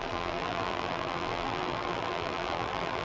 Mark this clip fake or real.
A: fake